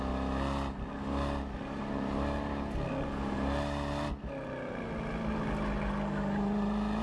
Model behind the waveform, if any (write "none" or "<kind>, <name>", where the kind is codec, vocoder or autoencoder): none